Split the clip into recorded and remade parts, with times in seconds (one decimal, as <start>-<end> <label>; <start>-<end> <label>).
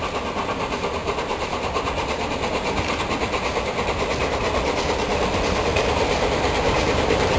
0.0-7.4 recorded